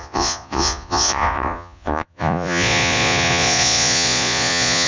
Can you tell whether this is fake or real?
fake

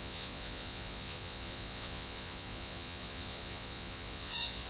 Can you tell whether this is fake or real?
fake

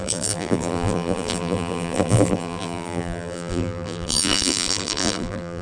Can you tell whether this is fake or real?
fake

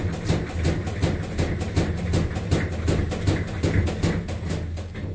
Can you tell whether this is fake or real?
real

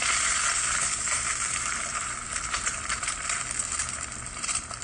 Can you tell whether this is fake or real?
fake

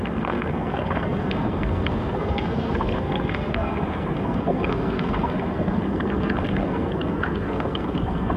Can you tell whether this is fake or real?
fake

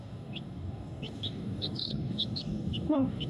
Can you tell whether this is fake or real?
fake